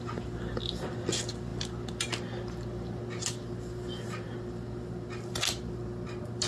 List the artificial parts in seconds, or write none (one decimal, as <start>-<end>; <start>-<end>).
none